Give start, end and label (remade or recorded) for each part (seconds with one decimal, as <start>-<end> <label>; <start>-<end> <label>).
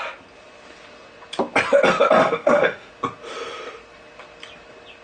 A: 0.0-2.2 recorded; 2.2-2.9 remade; 2.9-5.0 recorded